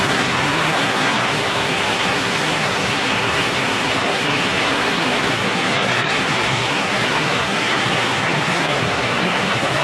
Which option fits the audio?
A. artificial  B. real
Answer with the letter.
A